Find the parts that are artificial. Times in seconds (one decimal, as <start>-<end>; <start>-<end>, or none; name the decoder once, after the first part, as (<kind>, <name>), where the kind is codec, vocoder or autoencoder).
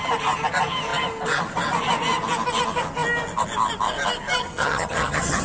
4.4-5.4 (vocoder, HiFi-GAN)